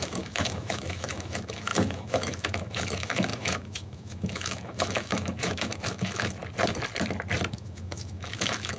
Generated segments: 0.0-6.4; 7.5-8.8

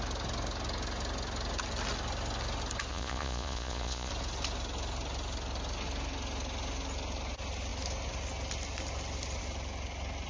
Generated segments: 2.9-4.1

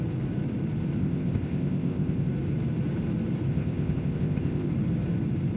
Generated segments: 1.0-2.3; 3.5-4.7

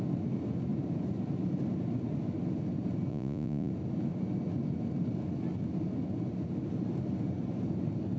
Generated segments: 3.1-3.7

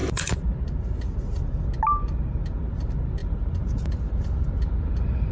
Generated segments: 0.0-0.8; 3.2-4.1

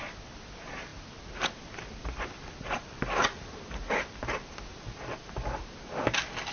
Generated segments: none

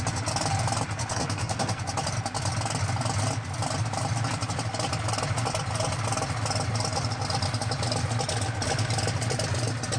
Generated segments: 1.1-1.8

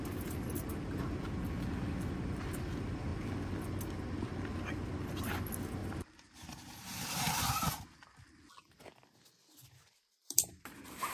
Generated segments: 5.8-7.1